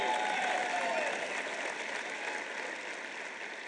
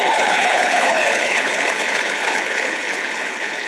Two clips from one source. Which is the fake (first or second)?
second